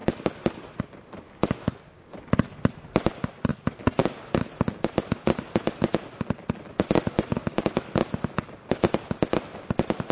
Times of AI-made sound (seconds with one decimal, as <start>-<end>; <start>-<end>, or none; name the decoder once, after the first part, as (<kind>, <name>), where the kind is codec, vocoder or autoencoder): none